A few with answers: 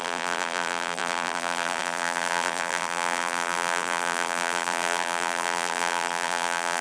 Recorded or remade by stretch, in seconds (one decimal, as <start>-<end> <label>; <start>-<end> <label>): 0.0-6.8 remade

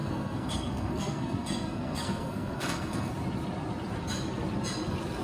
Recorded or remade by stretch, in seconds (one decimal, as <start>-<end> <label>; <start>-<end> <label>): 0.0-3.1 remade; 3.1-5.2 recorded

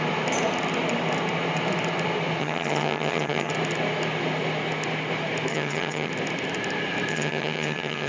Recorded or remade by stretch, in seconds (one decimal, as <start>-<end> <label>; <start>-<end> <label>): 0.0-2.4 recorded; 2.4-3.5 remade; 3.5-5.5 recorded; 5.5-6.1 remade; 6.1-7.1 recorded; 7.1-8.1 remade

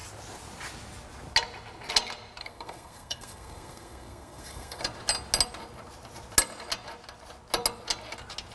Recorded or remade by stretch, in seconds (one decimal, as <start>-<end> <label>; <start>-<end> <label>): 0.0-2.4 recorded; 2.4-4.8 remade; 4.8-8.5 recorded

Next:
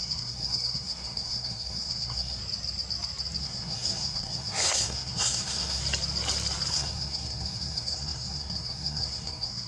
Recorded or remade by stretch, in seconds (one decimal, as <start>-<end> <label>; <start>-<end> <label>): 0.0-2.4 remade; 2.4-3.4 recorded; 3.4-5.8 remade; 5.8-6.7 recorded; 6.7-9.7 remade